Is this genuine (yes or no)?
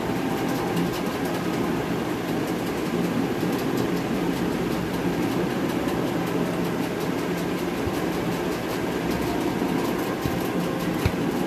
yes